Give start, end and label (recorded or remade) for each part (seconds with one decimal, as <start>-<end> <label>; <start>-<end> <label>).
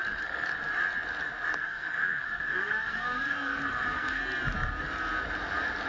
0.0-0.5 remade; 0.5-1.5 recorded; 1.5-4.2 remade; 4.2-5.9 recorded